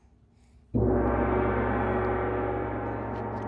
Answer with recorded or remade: recorded